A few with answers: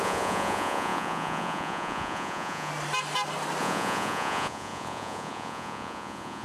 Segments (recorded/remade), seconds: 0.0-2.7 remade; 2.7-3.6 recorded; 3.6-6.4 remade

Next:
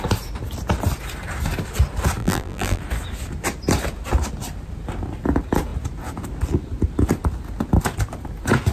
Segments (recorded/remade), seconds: 0.0-2.2 recorded; 2.2-2.8 remade; 2.8-8.7 recorded